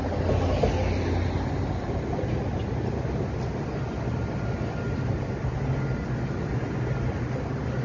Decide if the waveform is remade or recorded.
recorded